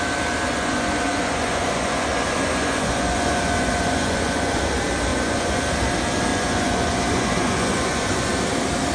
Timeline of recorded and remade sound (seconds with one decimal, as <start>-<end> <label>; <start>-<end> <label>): 0.0-0.5 recorded; 0.5-4.6 remade; 4.6-5.1 recorded; 5.1-5.6 remade; 5.6-6.3 recorded; 6.3-8.3 remade; 8.3-8.9 recorded